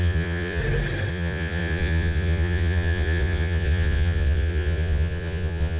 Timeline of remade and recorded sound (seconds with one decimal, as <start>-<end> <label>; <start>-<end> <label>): 0.0-0.6 remade; 0.6-1.1 recorded; 1.1-5.8 remade